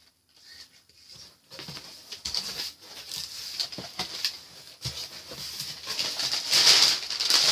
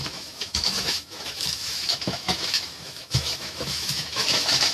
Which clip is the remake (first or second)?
second